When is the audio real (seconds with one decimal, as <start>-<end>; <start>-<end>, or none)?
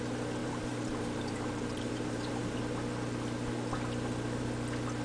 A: 0.0-0.4; 2.4-5.0